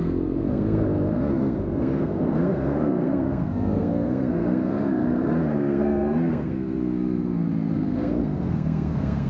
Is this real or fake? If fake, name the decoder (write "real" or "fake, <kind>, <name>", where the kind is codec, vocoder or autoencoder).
fake, codec, SNAC